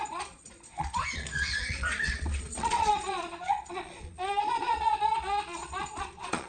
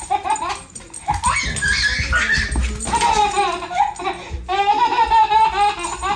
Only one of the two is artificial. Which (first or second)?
first